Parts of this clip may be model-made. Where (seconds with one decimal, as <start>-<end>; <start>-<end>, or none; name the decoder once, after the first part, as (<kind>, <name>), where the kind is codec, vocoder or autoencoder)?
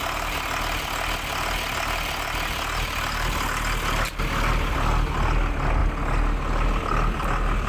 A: none